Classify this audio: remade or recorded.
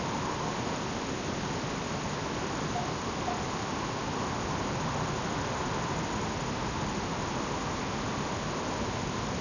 recorded